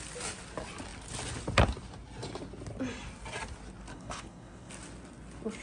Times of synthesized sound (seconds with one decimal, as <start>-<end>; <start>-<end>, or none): 3.9-4.7